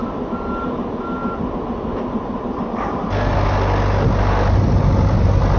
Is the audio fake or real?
real